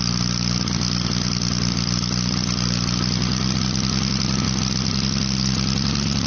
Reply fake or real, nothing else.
real